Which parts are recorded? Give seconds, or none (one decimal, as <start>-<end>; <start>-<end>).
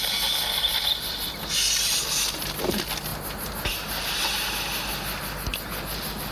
0.0-0.7; 2.6-6.3